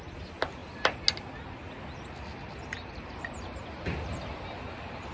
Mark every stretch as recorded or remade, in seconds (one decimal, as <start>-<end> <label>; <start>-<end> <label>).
0.0-5.1 recorded